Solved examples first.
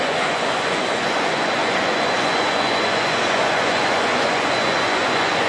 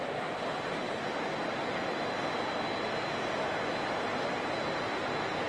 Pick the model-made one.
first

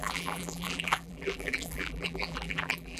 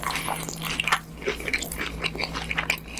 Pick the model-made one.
first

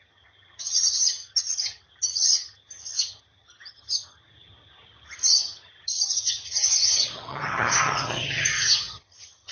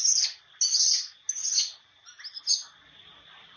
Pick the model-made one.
first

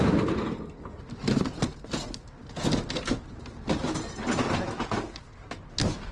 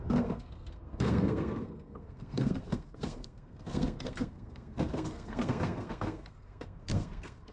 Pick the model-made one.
second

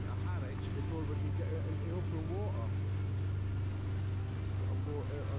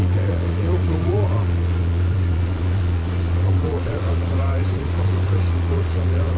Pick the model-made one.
second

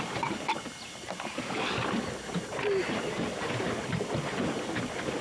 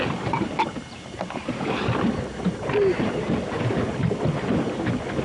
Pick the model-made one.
second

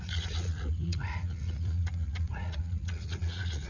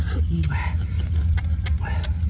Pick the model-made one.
first